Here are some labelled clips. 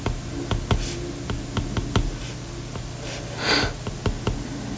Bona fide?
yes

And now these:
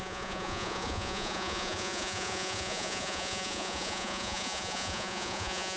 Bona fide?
no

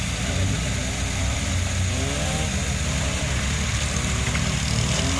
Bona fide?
yes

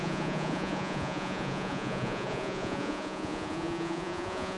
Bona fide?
no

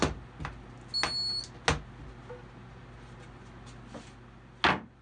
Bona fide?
yes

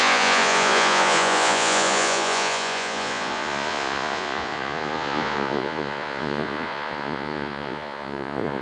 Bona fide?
no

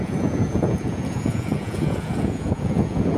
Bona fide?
no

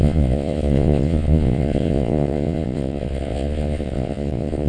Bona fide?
no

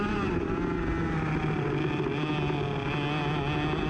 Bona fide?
yes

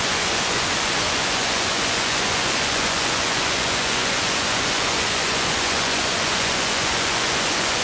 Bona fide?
no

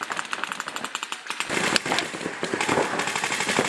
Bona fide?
yes